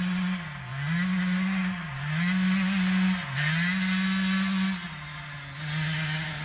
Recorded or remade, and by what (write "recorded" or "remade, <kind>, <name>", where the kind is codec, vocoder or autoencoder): recorded